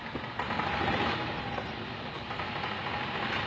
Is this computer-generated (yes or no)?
no